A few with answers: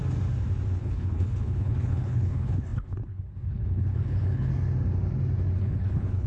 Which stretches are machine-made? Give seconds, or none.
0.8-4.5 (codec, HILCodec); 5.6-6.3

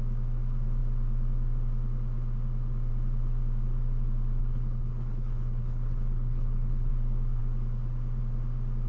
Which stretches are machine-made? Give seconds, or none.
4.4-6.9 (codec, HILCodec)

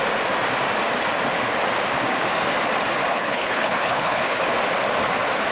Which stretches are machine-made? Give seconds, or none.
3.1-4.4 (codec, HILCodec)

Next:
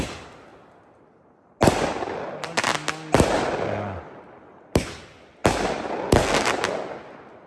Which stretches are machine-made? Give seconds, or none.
none

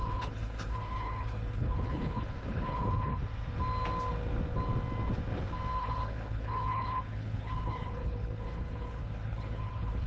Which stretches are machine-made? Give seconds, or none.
0.0-3.2 (codec, HILCodec); 5.8-10.1

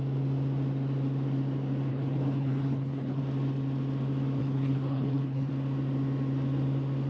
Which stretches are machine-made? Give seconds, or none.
1.9-3.2 (codec, HILCodec); 4.4-5.5

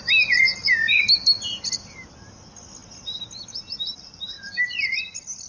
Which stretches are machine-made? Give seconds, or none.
none

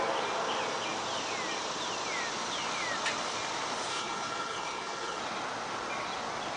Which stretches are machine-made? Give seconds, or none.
3.9-5.2 (codec, HILCodec)